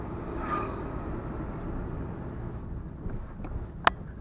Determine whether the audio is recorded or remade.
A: recorded